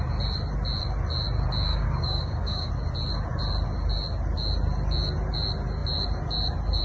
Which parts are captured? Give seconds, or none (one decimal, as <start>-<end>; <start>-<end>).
0.0-1.7; 2.7-6.8

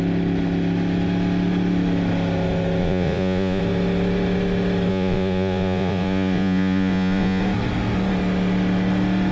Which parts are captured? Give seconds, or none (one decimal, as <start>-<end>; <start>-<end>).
0.0-2.8; 3.6-4.9; 7.4-9.3

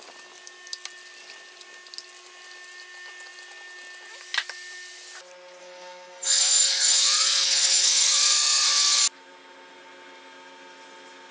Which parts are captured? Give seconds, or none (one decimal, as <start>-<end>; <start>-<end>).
0.0-5.6; 9.0-11.3